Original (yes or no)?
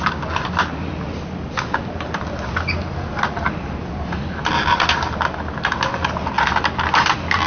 yes